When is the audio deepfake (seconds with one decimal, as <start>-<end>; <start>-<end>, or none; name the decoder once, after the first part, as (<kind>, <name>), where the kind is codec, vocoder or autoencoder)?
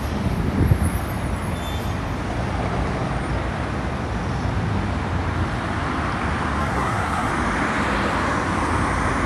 6.6-7.3 (codec, SNAC)